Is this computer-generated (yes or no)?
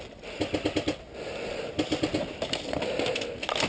no